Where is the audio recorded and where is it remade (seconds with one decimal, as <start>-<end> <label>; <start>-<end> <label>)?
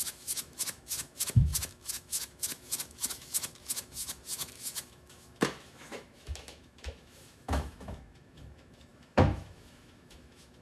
0.0-10.6 remade